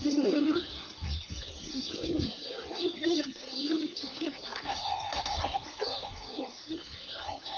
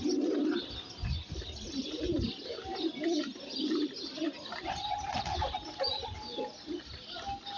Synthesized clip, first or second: first